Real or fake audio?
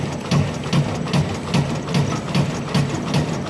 real